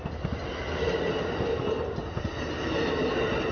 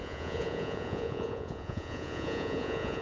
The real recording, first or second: first